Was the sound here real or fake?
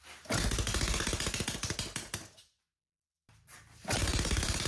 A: real